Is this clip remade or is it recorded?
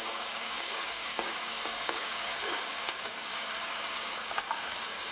remade